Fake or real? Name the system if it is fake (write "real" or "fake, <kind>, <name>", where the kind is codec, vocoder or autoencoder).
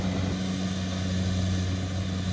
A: real